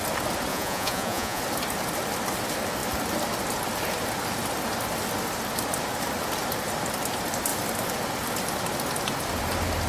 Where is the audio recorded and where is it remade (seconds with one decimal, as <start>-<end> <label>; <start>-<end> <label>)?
0.0-0.5 recorded; 0.5-1.4 remade; 1.4-9.9 recorded